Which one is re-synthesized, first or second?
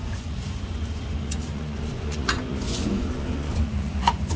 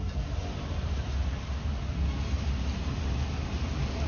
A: first